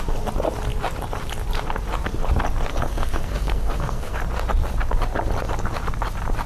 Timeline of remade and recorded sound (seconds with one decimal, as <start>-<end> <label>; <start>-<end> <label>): 0.0-2.7 recorded; 2.7-4.2 remade; 4.2-6.5 recorded